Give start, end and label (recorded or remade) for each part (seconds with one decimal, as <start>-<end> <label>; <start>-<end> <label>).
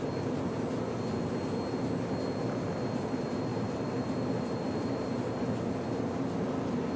0.0-3.5 recorded; 3.5-5.6 remade; 5.6-7.0 recorded